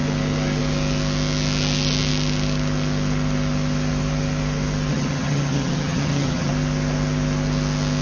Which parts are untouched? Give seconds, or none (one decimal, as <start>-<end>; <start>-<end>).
0.0-4.9; 6.5-8.0